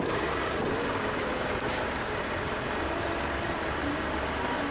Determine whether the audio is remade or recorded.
remade